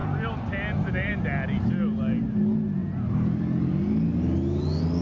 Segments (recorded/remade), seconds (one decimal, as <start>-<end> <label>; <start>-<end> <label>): 0.0-5.0 recorded